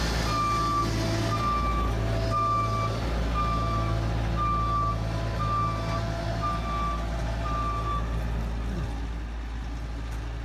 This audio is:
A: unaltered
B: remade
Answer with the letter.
A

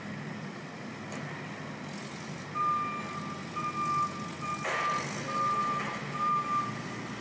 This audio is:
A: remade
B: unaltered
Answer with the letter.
B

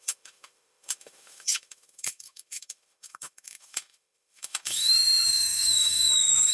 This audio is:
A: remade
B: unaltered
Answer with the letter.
A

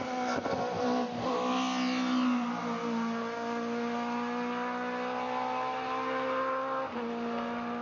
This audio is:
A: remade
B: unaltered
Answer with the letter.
B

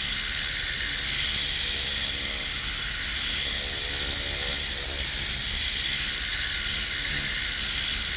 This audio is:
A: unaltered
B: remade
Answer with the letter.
A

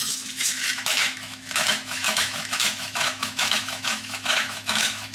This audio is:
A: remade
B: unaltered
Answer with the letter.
A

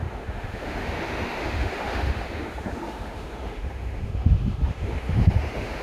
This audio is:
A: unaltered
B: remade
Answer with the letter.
B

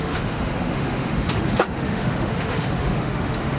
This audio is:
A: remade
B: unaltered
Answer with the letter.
A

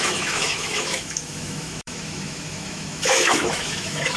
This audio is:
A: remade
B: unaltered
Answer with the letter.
A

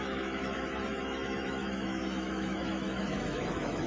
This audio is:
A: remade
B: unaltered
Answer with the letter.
A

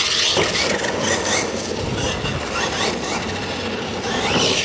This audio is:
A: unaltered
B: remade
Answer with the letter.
A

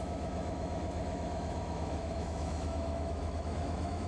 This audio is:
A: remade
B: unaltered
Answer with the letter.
A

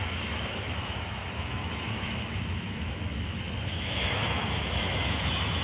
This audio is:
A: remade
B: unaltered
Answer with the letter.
A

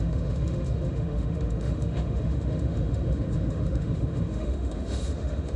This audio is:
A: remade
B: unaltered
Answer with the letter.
A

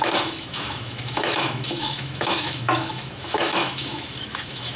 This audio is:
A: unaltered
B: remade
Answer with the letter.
B